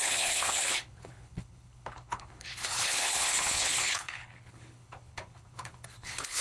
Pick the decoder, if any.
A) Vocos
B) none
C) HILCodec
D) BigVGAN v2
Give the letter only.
C